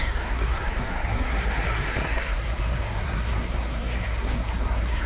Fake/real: fake